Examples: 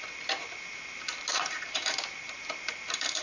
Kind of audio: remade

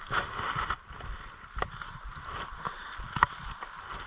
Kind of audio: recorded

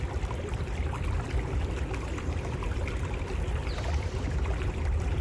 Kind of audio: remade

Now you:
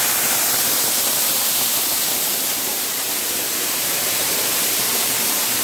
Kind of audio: remade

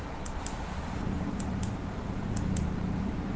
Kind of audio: recorded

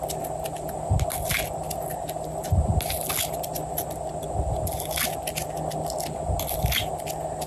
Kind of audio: recorded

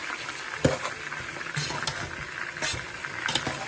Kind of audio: recorded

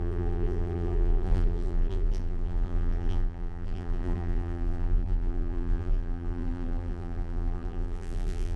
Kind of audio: remade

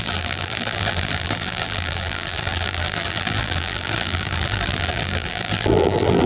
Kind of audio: remade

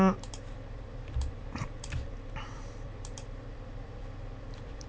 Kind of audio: remade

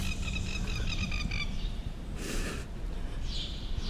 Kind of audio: remade